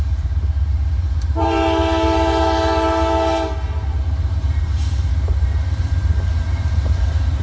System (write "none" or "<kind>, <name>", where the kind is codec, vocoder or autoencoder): vocoder, BigVGAN v2